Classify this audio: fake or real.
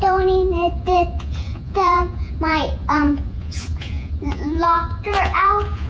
fake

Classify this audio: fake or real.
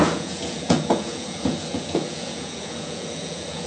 fake